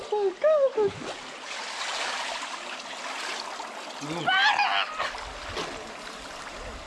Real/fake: real